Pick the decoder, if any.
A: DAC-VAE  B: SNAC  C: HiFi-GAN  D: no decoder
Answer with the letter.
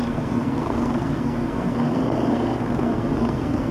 B